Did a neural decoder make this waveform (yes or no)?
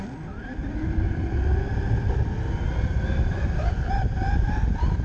no